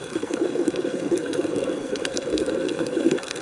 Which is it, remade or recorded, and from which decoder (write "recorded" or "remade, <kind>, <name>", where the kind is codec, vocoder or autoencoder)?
remade, codec, SNAC